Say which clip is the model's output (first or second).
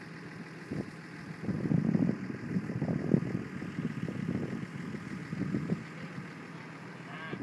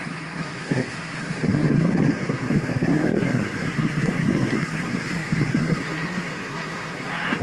second